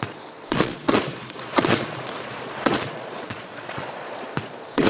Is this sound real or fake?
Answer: fake